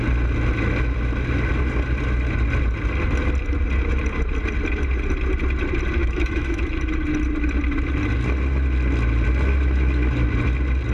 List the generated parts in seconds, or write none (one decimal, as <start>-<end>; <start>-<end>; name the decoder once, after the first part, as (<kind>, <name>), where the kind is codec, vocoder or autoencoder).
6.0-6.6 (autoencoder, DAC-VAE)

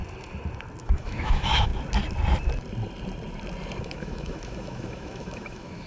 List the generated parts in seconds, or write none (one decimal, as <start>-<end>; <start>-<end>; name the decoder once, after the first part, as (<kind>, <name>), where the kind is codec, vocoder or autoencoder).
0.8-1.7 (autoencoder, DAC-VAE); 3.8-5.9

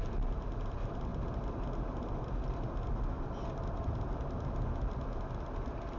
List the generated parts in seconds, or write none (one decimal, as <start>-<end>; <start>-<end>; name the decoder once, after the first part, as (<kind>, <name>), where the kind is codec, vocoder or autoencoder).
none

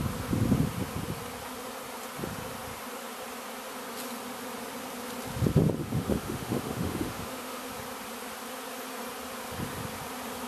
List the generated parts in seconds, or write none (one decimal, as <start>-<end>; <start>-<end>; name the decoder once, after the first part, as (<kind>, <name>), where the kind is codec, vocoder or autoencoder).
5.8-7.7 (autoencoder, DAC-VAE)

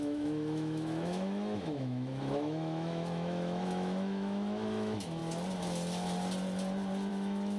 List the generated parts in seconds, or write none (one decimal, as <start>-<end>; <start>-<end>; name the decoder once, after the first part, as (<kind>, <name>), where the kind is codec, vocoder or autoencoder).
0.0-5.2 (autoencoder, DAC-VAE); 7.1-7.6

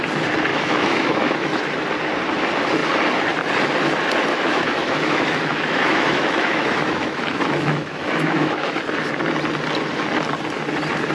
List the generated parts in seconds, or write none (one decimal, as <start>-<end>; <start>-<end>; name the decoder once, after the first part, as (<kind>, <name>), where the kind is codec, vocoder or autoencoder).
0.5-1.6 (autoencoder, DAC-VAE); 4.3-8.8